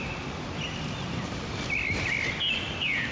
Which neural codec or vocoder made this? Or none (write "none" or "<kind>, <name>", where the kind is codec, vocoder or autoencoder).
none